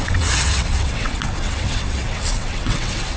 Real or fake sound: fake